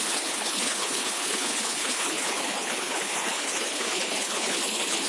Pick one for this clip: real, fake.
fake